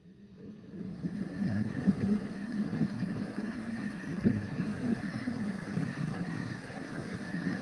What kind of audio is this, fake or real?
fake